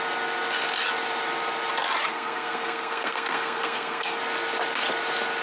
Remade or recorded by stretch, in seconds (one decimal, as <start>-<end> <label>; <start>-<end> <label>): 0.0-2.1 recorded; 2.1-4.2 remade; 4.2-5.4 recorded